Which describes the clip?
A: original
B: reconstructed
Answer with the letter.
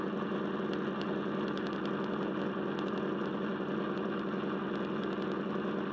A